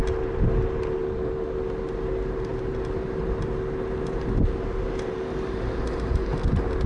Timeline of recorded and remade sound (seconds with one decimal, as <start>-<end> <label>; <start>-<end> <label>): 0.0-6.9 recorded